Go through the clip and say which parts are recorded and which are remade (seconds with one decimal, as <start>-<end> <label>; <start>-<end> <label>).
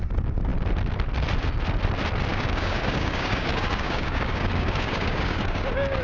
0.0-2.3 recorded; 2.3-6.0 remade